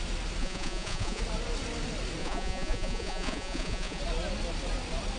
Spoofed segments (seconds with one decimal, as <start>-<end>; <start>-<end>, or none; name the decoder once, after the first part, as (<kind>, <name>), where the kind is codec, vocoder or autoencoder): 0.4-1.2 (vocoder, Vocos); 2.2-4.0